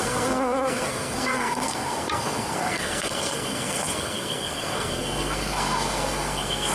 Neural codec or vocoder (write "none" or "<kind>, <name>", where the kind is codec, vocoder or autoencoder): codec, SNAC